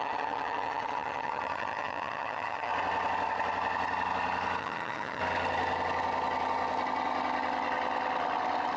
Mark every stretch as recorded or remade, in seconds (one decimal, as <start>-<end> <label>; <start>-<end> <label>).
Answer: 0.0-2.7 remade; 2.7-4.6 recorded; 4.6-5.2 remade; 5.2-8.8 recorded